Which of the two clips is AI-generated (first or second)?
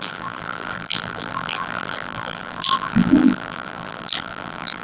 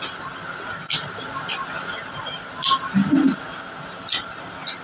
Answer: first